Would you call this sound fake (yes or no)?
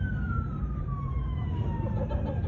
yes